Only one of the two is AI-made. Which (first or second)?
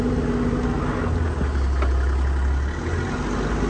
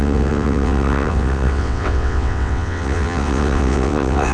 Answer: second